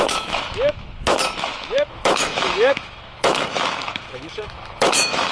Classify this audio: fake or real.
fake